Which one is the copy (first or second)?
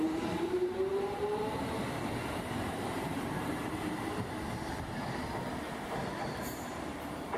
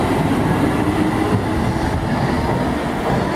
first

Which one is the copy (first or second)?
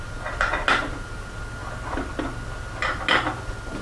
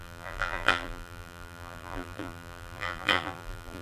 second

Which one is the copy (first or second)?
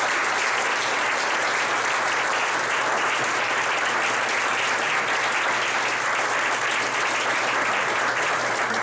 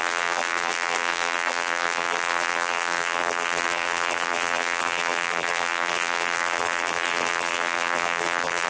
second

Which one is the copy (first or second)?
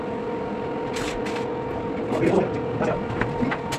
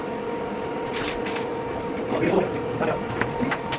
second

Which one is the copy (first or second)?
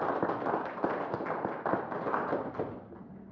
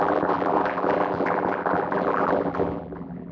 second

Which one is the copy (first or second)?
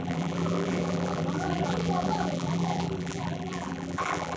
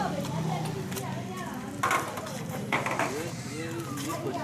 first